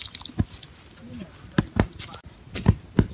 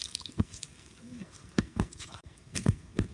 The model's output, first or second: second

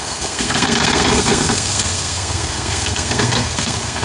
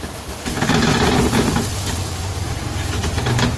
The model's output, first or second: first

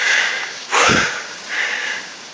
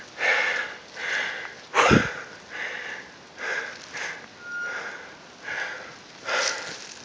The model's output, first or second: first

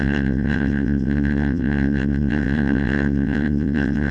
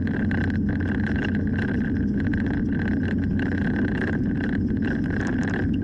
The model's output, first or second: first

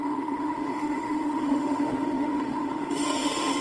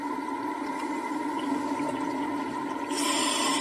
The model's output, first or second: first